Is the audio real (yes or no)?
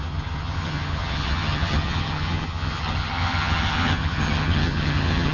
no